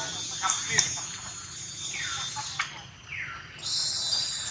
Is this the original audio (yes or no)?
yes